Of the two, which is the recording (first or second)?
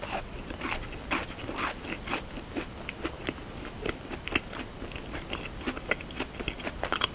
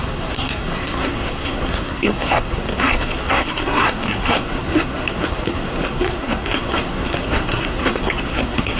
first